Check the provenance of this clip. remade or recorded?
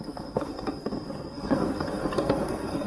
remade